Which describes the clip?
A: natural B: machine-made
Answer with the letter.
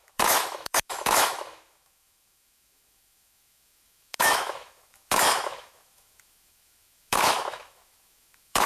B